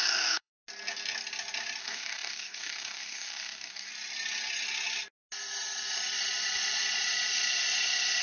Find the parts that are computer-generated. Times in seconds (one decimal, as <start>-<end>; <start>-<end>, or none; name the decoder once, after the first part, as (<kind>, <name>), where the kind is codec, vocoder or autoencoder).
0.0-0.5 (codec, DAC); 1.8-3.9